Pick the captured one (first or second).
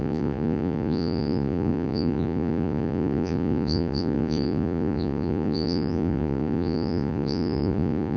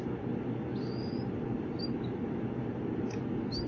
second